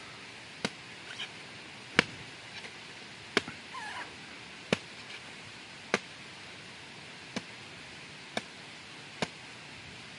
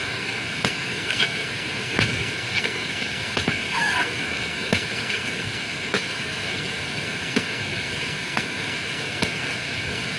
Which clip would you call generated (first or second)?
second